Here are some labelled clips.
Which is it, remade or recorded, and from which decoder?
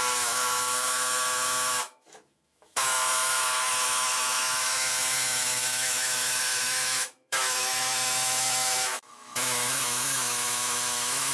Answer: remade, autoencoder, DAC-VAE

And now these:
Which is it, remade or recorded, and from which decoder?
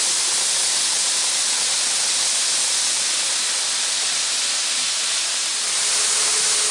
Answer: recorded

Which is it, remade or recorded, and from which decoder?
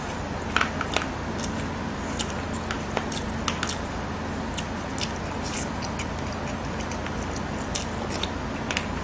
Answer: recorded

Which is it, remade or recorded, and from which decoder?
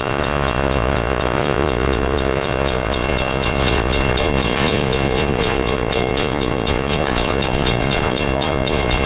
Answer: remade, vocoder, Vocos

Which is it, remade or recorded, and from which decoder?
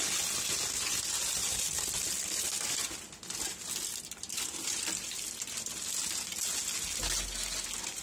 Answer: recorded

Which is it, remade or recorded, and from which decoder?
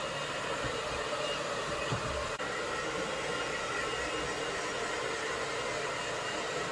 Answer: recorded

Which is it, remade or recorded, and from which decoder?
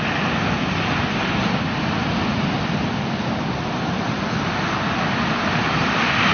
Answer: recorded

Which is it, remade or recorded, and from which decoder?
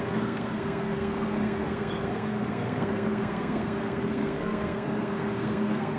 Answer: remade, codec, SNAC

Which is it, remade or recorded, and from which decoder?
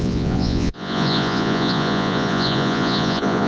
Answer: remade, vocoder, Vocos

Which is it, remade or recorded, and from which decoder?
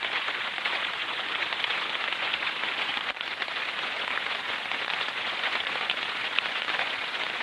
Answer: remade, vocoder, Vocos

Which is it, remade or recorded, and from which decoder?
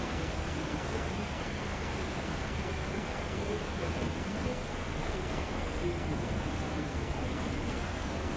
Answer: remade, codec, SNAC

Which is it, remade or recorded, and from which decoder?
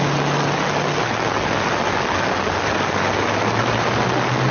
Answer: recorded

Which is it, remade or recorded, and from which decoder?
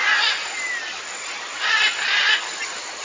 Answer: recorded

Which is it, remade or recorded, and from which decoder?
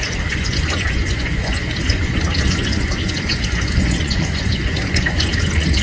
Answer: remade, vocoder, Vocos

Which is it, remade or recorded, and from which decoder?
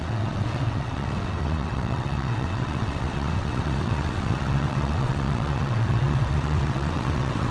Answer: remade, vocoder, WaveNeXt